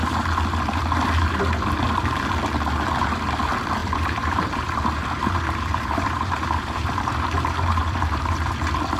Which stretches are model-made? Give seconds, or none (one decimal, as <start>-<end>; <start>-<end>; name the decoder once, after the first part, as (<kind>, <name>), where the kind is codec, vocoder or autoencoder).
3.8-8.5 (vocoder, BigVGAN v2)